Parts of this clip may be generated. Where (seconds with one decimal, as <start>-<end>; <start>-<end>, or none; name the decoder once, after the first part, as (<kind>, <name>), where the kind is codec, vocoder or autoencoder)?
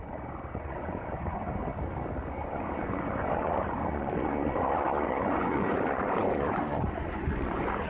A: 0.0-1.6 (vocoder, Vocos); 2.3-7.9